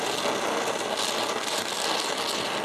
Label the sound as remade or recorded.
recorded